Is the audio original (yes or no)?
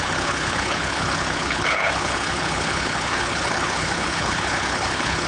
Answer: no